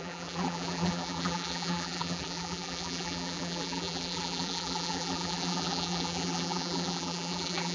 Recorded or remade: remade